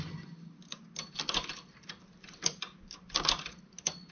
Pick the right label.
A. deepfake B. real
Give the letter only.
B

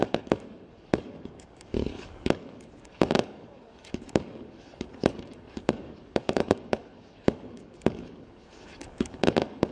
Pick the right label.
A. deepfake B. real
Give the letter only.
A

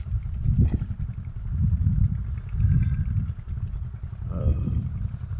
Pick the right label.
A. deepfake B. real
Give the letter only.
B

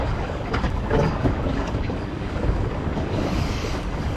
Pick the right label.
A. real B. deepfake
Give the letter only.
B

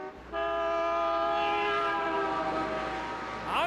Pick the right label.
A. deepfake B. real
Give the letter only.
B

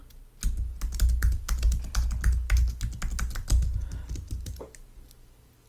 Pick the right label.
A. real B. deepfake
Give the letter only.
A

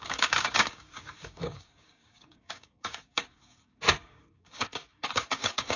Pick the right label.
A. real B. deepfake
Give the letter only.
B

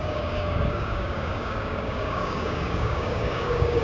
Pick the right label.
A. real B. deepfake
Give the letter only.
B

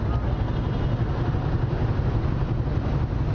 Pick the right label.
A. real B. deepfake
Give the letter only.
A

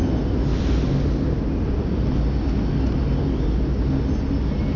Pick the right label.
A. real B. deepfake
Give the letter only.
A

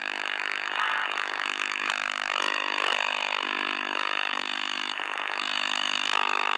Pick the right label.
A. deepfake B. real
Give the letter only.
A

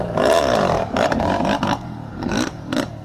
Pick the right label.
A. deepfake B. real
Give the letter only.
A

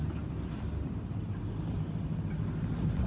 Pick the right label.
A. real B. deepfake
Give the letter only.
A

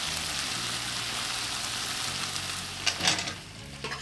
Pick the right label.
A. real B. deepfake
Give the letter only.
A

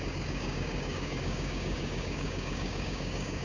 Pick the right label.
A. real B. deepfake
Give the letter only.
B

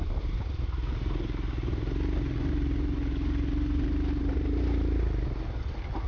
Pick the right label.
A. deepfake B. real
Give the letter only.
B